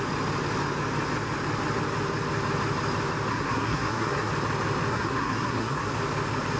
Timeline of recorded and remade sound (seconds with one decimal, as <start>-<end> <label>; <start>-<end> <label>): 0.0-3.3 recorded; 3.3-4.3 remade; 4.3-4.9 recorded; 4.9-5.9 remade; 5.9-6.6 recorded